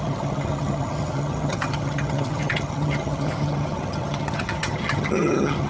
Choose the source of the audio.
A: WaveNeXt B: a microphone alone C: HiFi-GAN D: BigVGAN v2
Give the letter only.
C